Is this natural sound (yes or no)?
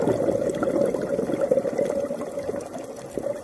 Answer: yes